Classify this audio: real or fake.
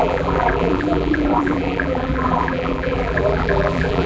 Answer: fake